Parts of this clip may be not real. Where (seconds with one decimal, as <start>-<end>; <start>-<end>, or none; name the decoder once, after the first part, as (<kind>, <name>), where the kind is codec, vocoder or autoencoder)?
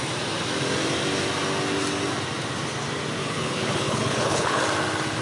3.2-4.6 (codec, HILCodec)